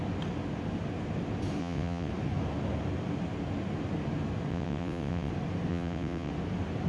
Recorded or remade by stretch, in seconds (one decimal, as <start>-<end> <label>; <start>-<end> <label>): 0.0-1.6 recorded; 1.6-2.1 remade; 2.1-4.5 recorded; 4.5-5.3 remade; 5.3-5.7 recorded; 5.7-6.3 remade; 6.3-6.9 recorded